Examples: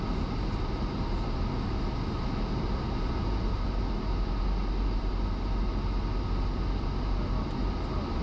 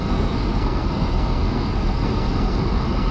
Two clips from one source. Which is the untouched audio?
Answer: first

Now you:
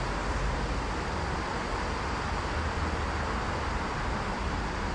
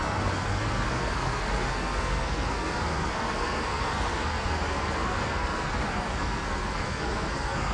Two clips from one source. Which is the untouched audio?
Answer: first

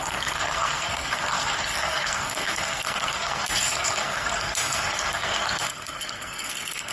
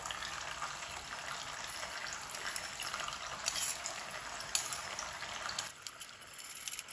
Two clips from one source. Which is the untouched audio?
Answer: second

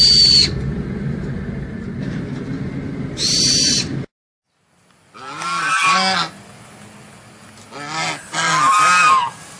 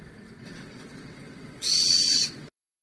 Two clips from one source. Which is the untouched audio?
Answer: first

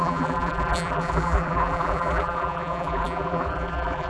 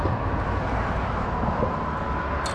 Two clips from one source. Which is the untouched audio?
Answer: second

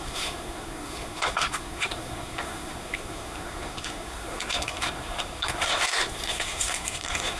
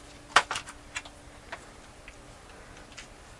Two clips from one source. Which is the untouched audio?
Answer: second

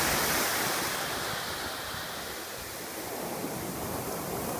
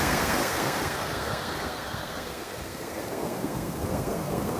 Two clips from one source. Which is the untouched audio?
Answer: first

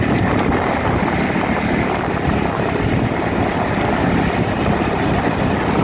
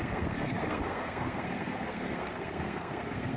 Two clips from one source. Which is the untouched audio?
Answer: first